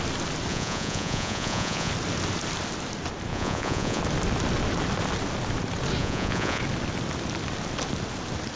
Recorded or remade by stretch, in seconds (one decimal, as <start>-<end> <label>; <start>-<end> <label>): 0.0-0.5 recorded; 0.5-1.9 remade; 1.9-3.3 recorded; 3.3-4.0 remade; 4.0-6.0 recorded; 6.0-6.6 remade; 6.6-8.6 recorded